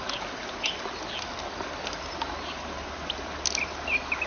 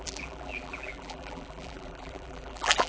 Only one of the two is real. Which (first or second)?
first